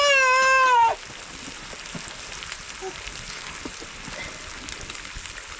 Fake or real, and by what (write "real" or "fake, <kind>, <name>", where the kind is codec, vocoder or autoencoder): real